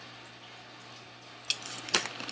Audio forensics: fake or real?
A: real